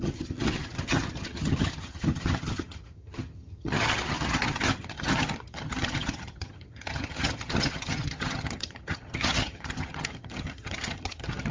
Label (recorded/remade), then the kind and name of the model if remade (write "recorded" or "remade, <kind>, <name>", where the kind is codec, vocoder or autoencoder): remade, vocoder, HiFi-GAN